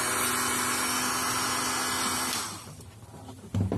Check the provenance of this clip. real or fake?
real